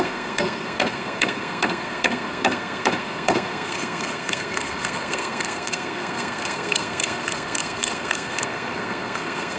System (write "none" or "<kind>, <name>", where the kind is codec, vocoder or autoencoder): codec, SNAC